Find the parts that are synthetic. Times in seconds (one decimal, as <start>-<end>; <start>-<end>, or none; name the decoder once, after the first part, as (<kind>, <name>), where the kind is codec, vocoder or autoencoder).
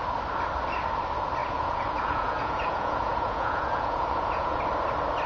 1.4-4.6 (vocoder, Vocos)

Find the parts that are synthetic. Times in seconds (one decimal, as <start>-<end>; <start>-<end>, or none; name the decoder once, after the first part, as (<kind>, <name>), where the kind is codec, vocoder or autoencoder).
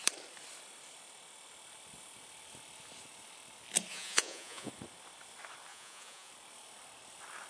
3.9-4.7 (vocoder, Vocos); 5.7-6.3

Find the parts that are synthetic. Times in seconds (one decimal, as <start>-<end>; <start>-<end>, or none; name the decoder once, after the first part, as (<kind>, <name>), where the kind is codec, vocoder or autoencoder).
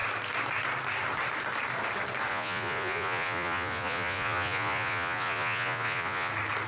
2.3-6.3 (vocoder, Vocos)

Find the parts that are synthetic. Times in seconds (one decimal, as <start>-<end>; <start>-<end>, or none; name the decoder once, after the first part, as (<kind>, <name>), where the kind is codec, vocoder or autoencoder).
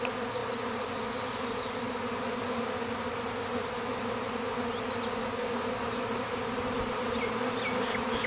none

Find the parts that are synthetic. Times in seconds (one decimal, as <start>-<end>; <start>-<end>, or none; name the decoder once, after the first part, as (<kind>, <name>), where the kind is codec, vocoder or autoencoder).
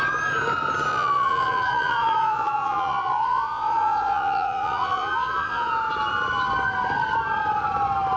0.9-5.7 (vocoder, Vocos)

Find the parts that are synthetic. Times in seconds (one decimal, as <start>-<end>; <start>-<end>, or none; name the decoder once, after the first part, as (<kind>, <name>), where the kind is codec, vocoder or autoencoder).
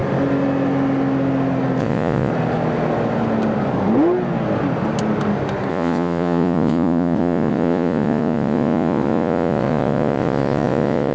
1.8-2.3 (vocoder, Vocos); 5.7-11.1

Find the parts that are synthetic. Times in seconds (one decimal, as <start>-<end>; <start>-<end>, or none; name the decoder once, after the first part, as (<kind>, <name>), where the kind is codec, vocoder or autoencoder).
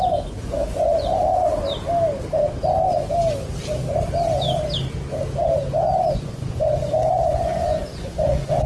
0.0-1.3 (vocoder, Vocos); 6.1-8.7